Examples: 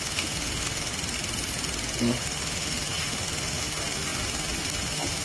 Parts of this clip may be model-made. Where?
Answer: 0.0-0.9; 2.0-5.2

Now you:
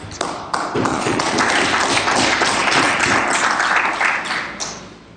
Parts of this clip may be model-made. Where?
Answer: 0.9-1.4

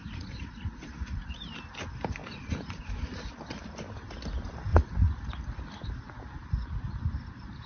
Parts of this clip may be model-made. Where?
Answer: 0.0-1.5; 2.2-2.8; 4.7-5.3

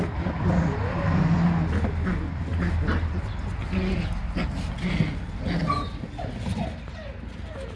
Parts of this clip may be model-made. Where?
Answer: none

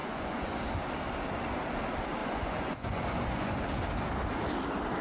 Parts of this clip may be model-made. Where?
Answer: 0.0-0.6; 2.2-3.6

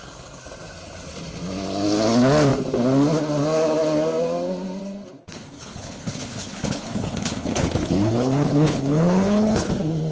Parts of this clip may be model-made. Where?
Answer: 5.2-9.7

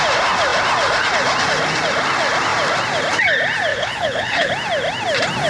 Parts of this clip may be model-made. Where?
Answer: 3.7-4.5

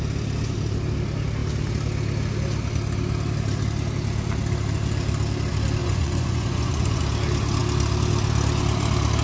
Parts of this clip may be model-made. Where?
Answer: 5.8-7.0